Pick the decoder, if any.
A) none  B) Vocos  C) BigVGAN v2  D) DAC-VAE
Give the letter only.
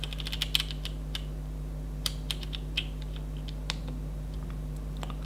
A